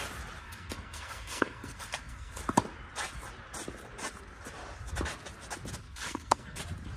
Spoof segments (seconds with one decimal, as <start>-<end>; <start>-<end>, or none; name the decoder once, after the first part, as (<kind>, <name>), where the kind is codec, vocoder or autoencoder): 0.4-2.4 (codec, SNAC); 5.8-6.6